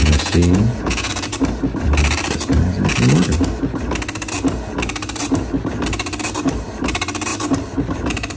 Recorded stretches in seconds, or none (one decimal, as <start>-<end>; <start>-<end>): 1.1-8.4